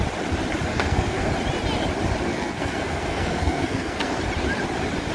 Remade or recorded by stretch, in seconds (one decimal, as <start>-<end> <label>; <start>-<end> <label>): 0.0-0.7 recorded; 0.7-1.3 remade; 1.3-2.3 recorded; 2.3-4.2 remade; 4.2-5.1 recorded